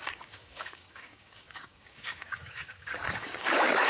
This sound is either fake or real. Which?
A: fake